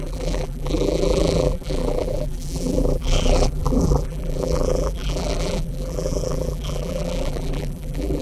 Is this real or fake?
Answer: fake